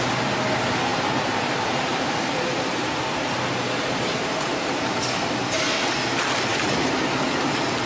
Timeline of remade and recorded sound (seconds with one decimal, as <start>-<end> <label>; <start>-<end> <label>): 0.0-0.9 recorded; 0.9-5.0 remade; 5.0-6.5 recorded; 6.5-7.4 remade; 7.4-7.9 recorded